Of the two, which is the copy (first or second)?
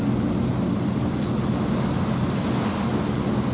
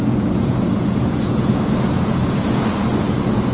second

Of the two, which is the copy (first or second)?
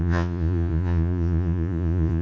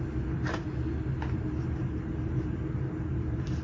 first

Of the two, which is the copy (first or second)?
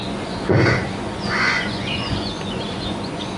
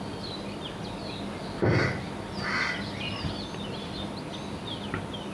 first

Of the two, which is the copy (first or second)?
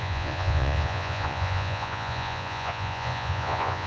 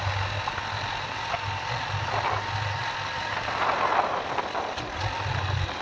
first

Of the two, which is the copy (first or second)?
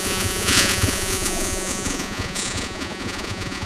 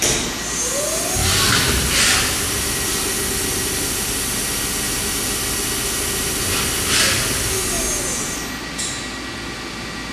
first